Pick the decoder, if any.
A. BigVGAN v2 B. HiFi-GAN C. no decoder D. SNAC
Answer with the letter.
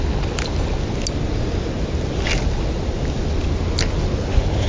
C